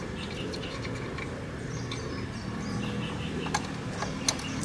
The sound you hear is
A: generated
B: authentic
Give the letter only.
B